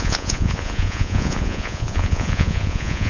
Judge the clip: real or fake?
fake